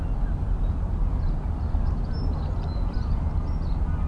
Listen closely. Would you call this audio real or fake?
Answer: real